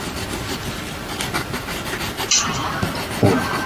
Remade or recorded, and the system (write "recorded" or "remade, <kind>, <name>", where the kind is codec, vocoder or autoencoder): recorded